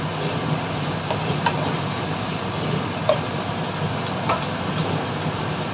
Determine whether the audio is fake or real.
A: real